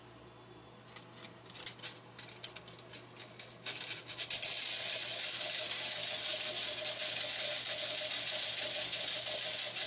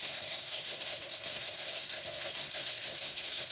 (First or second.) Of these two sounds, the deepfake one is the second